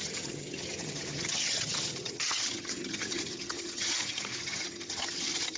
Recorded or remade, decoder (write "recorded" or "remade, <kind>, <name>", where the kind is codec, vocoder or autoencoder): remade, vocoder, HiFi-GAN